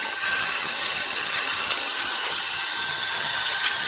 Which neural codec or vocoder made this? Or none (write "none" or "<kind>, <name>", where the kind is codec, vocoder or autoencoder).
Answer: vocoder, HiFi-GAN